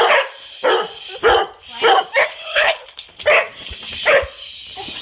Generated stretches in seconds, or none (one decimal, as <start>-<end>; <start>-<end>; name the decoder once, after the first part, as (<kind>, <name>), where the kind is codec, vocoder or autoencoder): 2.3-3.1 (codec, HILCodec)

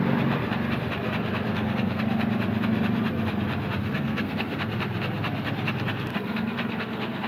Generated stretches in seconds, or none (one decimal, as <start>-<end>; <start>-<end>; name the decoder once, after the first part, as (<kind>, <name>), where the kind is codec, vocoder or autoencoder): 1.5-2.0 (codec, SNAC); 3.8-4.7; 6.1-7.3

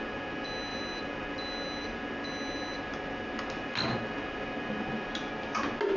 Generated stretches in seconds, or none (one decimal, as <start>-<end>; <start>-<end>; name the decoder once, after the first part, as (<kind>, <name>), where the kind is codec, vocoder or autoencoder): none